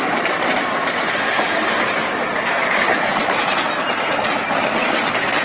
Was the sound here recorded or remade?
recorded